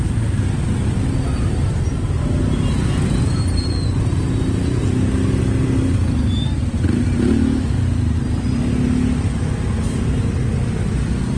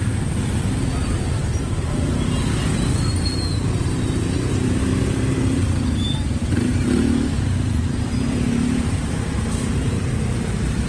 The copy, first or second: second